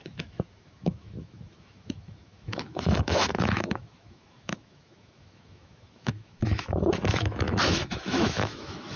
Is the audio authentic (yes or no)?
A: no